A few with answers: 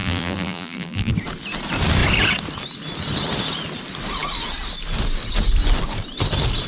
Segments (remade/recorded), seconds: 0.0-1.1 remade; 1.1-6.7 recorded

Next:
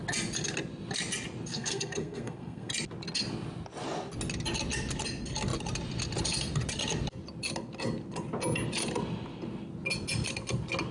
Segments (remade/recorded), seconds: 0.0-1.5 recorded; 1.5-2.7 remade; 2.7-10.9 recorded

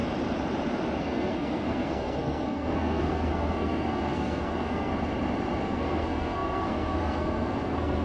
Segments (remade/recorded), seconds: 0.0-1.0 recorded; 1.0-4.9 remade; 4.9-5.6 recorded; 5.6-8.0 remade

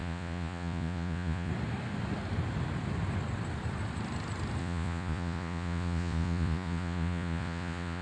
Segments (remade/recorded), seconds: 0.0-1.5 remade; 1.5-4.6 recorded; 4.6-8.0 remade

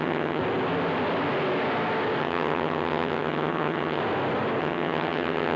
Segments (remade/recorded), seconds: 0.0-0.4 remade; 0.4-2.2 recorded; 2.2-4.0 remade; 4.0-4.6 recorded; 4.6-5.6 remade

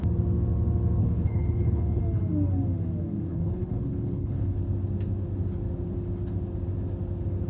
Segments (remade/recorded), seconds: 0.0-1.0 recorded; 1.0-2.0 remade; 2.0-3.3 recorded; 3.3-4.6 remade; 4.6-7.5 recorded

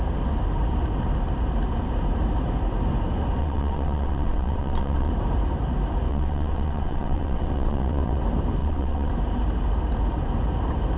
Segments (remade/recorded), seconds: 0.0-3.4 recorded; 3.4-5.1 remade; 5.1-6.1 recorded; 6.1-8.2 remade; 8.2-8.6 recorded; 8.6-9.1 remade; 9.1-11.0 recorded